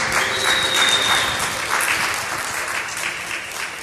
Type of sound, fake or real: real